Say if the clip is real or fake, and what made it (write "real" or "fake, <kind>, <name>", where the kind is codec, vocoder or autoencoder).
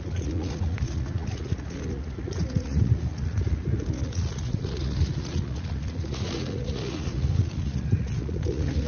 fake, vocoder, Vocos